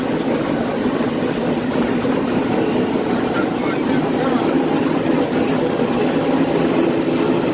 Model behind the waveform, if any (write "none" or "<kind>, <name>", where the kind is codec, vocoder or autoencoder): none